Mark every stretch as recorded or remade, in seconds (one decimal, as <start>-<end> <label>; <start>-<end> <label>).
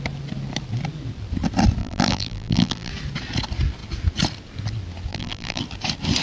0.0-1.8 recorded; 1.8-2.9 remade; 2.9-5.1 recorded; 5.1-5.6 remade; 5.6-6.2 recorded